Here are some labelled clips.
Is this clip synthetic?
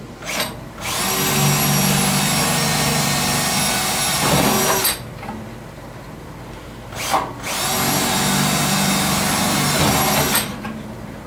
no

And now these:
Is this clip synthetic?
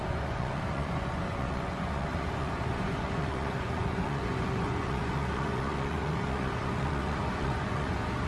yes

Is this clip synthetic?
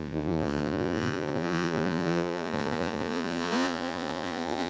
yes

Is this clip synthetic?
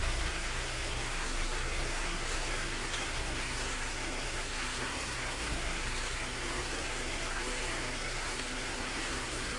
yes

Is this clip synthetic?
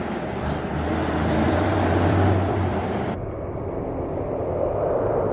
yes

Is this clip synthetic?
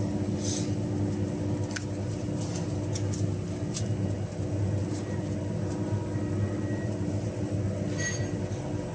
no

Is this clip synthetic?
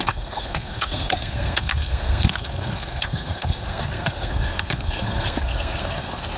yes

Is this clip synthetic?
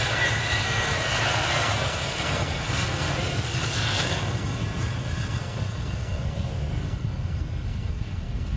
yes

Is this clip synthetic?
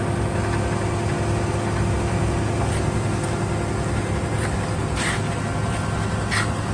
no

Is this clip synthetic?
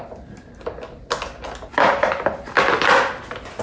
no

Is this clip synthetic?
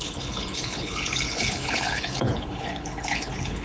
yes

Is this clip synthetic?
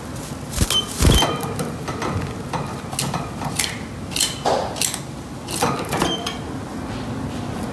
no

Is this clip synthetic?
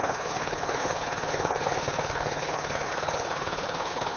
yes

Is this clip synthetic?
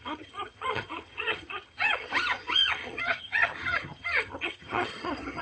yes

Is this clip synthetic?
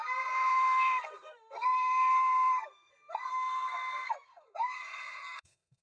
yes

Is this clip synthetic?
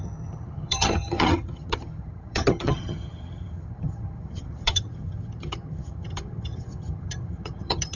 yes